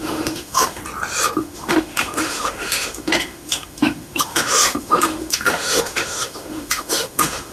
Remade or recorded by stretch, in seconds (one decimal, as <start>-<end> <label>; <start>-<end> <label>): 0.0-0.8 remade; 0.8-1.4 recorded; 1.4-7.5 remade